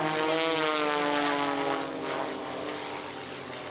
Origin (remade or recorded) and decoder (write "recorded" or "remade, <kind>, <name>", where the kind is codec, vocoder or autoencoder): recorded